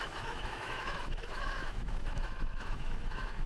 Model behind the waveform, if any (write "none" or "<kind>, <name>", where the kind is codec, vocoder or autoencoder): autoencoder, DAC-VAE